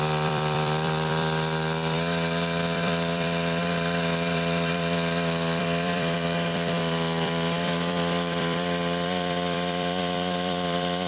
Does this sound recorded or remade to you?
remade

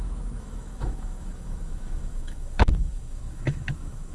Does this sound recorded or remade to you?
remade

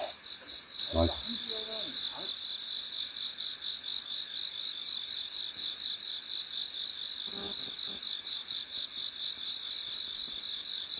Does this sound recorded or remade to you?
recorded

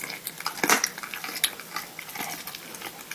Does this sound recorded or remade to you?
recorded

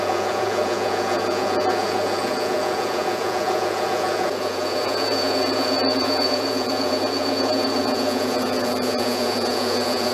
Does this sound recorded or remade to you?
remade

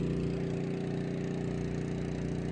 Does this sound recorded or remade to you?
recorded